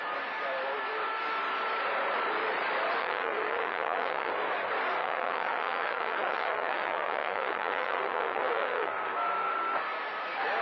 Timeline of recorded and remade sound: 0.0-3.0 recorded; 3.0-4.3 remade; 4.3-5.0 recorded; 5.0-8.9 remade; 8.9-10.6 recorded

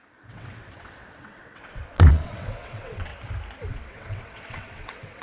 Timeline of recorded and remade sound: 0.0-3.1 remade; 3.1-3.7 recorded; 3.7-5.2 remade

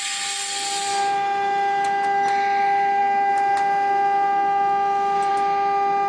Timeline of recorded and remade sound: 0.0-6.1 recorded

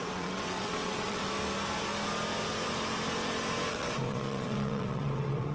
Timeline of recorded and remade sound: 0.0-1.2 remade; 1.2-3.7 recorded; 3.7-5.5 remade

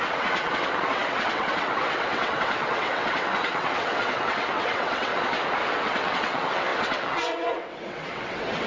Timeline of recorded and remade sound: 0.0-5.1 remade; 5.1-5.6 recorded; 5.6-8.7 remade

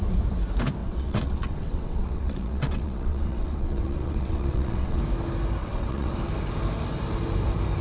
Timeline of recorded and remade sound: 0.0-0.8 recorded; 0.8-5.0 remade; 5.0-5.6 recorded; 5.6-6.1 remade; 6.1-7.8 recorded